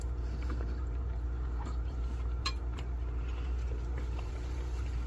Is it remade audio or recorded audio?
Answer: remade